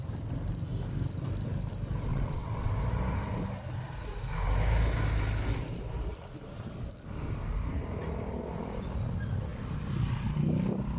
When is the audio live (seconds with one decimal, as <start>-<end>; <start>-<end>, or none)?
0.0-2.1; 2.7-11.0